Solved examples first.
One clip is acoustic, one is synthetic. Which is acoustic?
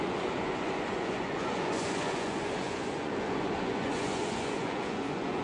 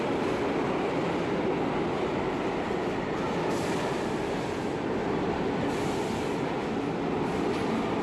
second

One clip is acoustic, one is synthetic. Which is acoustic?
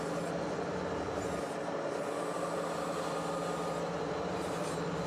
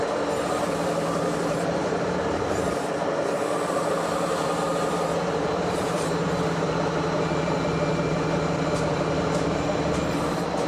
first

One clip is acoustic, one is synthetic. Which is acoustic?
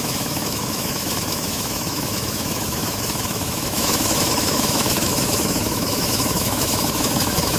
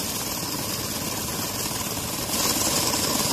second